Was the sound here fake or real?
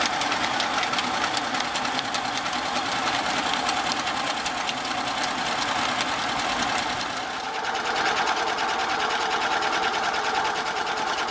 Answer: real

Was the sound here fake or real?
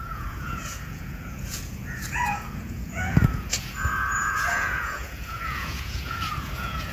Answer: fake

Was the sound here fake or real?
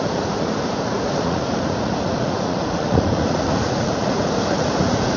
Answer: fake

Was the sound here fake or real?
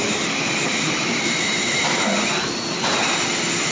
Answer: real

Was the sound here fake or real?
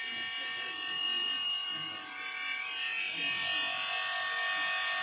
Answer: real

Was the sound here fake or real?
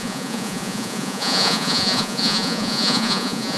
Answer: fake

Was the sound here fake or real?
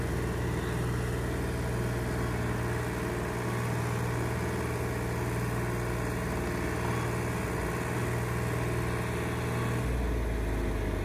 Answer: real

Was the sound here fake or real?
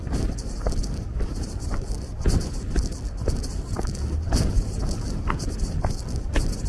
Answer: real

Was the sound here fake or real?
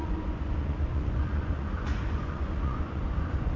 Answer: fake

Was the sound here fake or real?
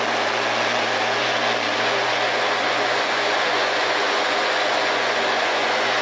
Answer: fake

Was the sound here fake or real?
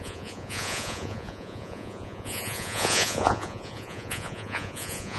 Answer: fake